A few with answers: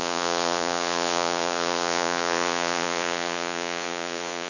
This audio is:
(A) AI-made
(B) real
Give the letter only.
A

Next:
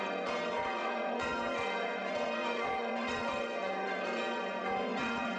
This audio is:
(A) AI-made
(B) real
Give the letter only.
A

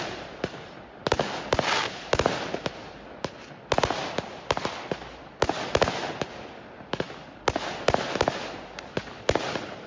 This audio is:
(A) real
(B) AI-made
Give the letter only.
A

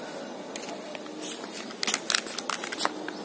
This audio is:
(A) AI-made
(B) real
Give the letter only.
B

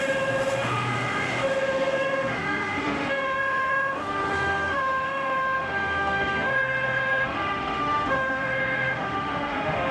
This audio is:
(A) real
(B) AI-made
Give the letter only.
B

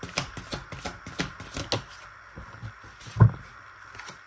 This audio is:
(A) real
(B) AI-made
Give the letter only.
A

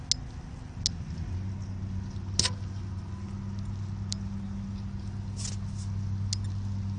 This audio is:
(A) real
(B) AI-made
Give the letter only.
A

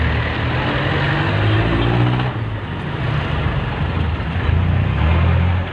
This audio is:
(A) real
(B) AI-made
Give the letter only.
A